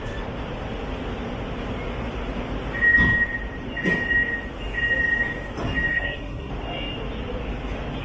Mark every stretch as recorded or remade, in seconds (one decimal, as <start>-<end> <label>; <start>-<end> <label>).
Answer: 0.0-5.9 recorded; 5.9-6.5 remade; 6.5-8.0 recorded